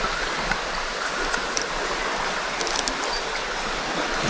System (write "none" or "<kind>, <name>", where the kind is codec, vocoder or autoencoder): none